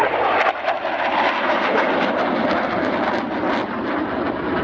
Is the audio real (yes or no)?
yes